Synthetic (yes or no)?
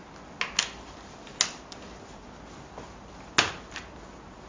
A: no